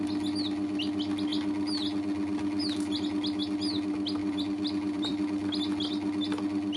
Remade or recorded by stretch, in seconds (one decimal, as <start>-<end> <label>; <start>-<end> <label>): 0.0-4.2 recorded; 4.2-5.2 remade; 5.2-6.8 recorded